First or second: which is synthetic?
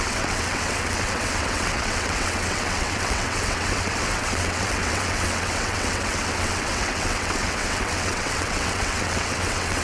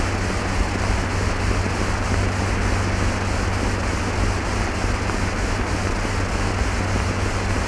first